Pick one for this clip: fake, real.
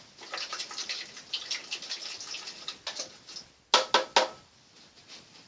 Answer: real